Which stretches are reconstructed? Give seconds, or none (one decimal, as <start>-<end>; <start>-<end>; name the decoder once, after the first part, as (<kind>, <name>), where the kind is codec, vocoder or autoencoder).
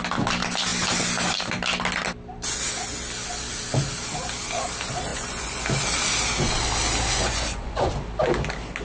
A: 5.1-5.6 (vocoder, Vocos); 7.1-7.9